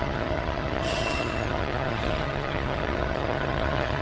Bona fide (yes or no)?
no